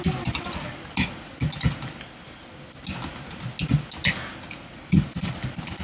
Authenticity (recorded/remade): recorded